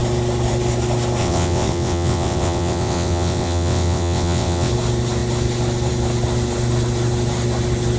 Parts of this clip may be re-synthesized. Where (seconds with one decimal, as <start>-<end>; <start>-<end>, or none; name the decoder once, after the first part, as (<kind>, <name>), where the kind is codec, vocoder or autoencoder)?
1.2-4.7 (vocoder, WaveNeXt)